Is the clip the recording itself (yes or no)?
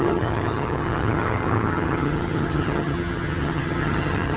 no